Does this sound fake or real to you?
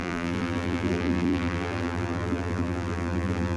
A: fake